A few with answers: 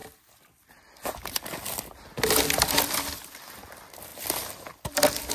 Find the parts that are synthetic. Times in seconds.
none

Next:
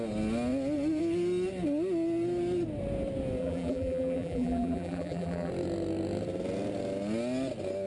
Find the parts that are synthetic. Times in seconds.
3.4-5.5 (vocoder, BigVGAN v2)

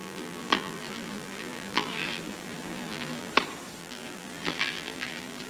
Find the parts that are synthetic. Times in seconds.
0.0-3.3 (vocoder, BigVGAN v2); 3.8-5.5